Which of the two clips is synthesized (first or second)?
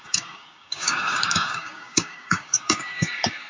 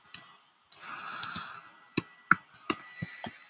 first